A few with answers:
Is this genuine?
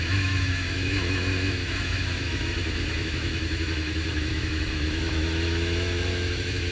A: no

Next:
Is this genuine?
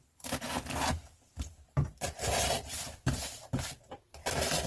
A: yes